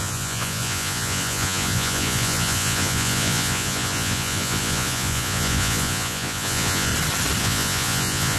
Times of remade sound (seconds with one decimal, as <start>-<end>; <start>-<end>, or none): 0.0-6.9; 7.4-8.4